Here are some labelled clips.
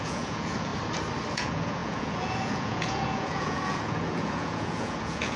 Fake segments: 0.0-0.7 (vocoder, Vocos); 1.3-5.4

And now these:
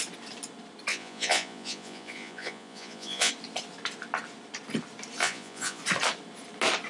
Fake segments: 0.9-3.3 (vocoder, Vocos); 5.2-5.8

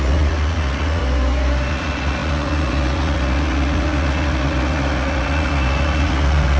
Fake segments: 0.0-1.0 (vocoder, Vocos); 1.7-6.6

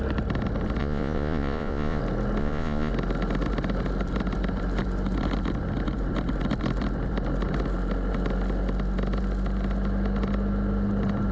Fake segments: 0.8-2.0 (vocoder, Vocos); 2.4-2.9

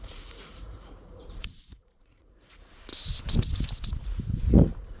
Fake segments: 0.0-2.9 (vocoder, Vocos); 4.0-5.0

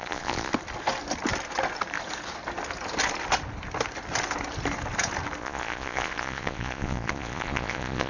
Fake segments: 0.0-0.5 (vocoder, Vocos); 5.4-8.1

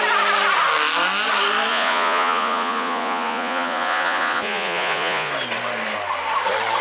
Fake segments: 1.7-5.3 (vocoder, Vocos)

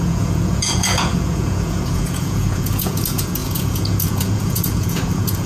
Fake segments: 0.0-5.5 (vocoder, Vocos)